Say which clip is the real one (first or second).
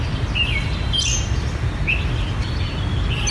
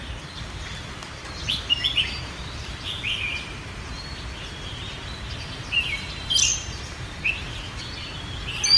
first